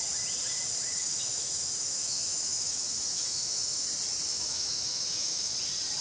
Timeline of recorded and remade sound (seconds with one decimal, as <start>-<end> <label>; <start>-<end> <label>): 0.0-0.9 recorded; 0.9-3.9 remade; 3.9-4.3 recorded; 4.3-5.5 remade; 5.5-6.0 recorded